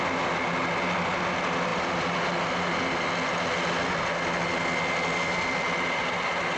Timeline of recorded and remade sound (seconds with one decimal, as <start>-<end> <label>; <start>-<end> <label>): 0.0-6.6 recorded